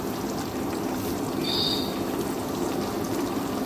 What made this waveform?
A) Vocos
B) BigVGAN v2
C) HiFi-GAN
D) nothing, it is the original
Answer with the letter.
D